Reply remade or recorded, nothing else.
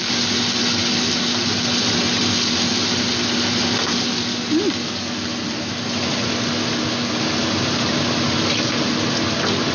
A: recorded